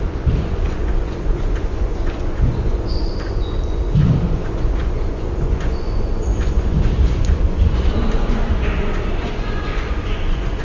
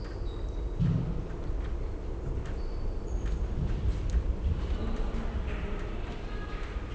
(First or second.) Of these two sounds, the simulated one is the first